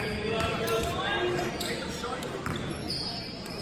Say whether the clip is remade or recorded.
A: recorded